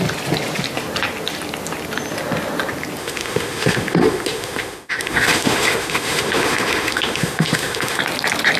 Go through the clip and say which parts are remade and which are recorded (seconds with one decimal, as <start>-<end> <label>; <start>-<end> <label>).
0.0-3.0 recorded; 3.0-8.0 remade; 8.0-8.6 recorded